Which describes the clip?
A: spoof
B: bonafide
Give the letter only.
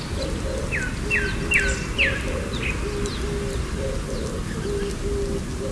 B